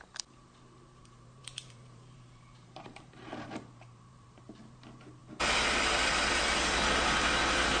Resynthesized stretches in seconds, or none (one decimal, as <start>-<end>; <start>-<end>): 1.0-4.6